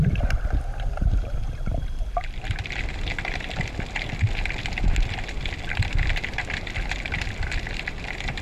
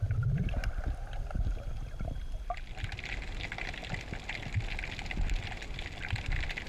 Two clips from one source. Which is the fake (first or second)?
first